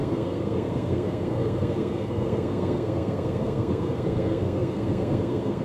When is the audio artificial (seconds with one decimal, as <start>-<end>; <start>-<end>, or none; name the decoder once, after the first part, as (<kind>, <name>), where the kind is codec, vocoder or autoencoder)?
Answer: 0.0-5.6 (codec, SNAC)